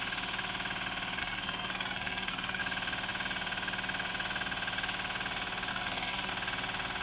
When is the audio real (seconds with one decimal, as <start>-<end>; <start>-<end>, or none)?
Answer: 0.0-1.2; 2.6-5.7; 6.3-7.0